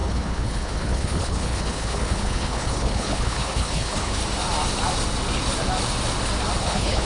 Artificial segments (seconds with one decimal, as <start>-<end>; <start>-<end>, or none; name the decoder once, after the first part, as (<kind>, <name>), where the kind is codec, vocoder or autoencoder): 0.0-4.2 (codec, HILCodec); 6.6-7.0